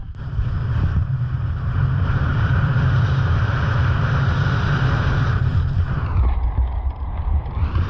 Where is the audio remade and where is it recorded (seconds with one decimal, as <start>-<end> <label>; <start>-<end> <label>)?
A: 0.0-5.5 remade; 5.5-6.6 recorded; 6.6-7.9 remade